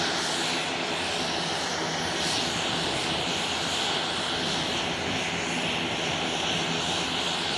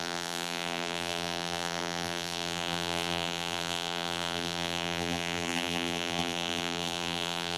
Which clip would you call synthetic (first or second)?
second